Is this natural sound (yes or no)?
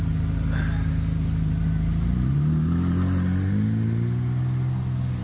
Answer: yes